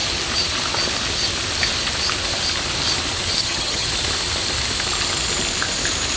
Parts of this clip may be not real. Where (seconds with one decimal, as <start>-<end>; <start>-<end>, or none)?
3.4-3.9